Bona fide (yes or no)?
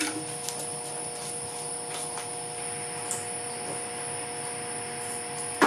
yes